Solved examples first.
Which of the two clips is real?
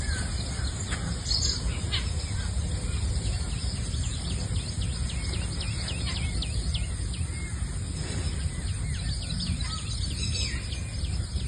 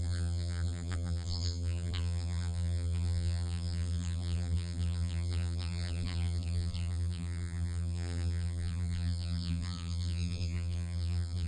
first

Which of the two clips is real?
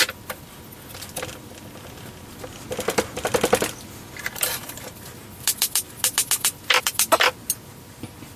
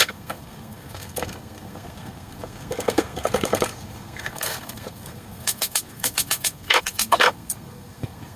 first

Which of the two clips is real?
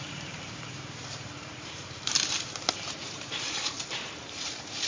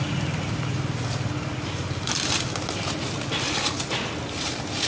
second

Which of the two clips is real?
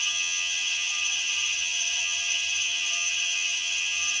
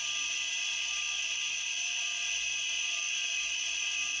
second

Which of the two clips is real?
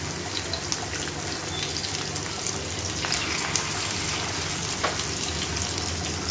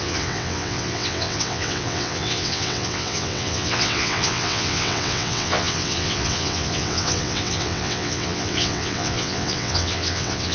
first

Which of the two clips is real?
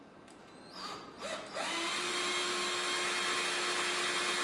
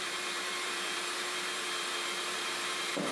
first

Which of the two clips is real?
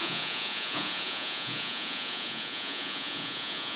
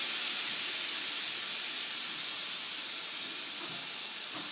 second